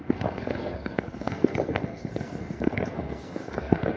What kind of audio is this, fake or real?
fake